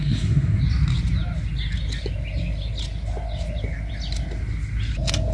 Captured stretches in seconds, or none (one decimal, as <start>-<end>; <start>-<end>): 0.6-5.3